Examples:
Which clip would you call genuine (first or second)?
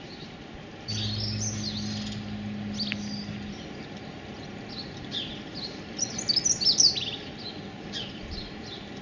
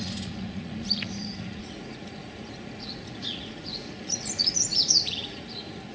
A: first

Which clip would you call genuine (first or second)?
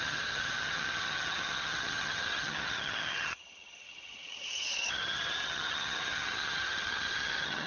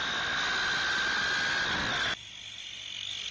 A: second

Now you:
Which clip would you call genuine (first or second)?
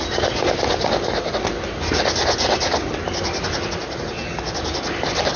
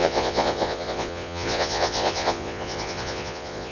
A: first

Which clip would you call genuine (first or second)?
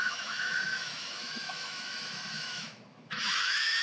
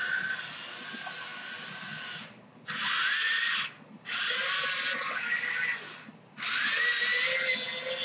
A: second